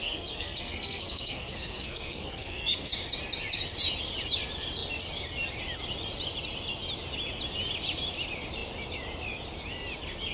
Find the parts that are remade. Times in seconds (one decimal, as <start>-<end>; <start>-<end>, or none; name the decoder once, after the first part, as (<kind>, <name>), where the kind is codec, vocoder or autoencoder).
0.0-2.9 (codec, SNAC)